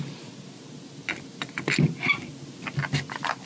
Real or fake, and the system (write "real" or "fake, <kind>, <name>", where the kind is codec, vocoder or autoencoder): real